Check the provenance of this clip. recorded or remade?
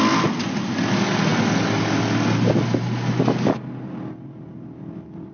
recorded